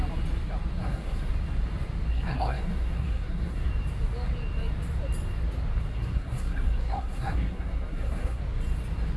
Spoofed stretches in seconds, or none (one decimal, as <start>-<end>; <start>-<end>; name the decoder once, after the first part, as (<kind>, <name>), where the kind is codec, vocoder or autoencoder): 0.8-1.3 (codec, SNAC); 2.1-3.7; 5.9-8.4